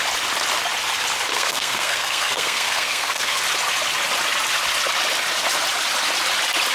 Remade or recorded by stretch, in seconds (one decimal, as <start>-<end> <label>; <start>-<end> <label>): 0.0-1.3 recorded; 1.3-3.4 remade; 3.4-6.7 recorded